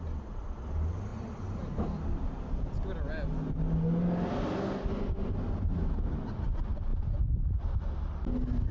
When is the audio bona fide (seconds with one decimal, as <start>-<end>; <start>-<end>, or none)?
0.0-8.7